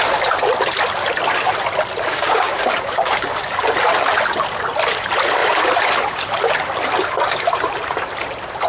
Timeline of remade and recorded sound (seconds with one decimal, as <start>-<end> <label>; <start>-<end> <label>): 0.0-2.1 recorded; 2.1-3.5 remade; 3.5-8.7 recorded